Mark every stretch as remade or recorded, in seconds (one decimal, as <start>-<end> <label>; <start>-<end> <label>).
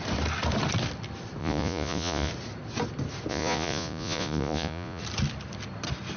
0.0-1.4 recorded; 1.4-2.3 remade; 2.3-3.3 recorded; 3.3-5.0 remade; 5.0-6.2 recorded